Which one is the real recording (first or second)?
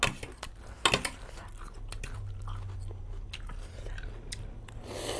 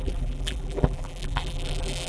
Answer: first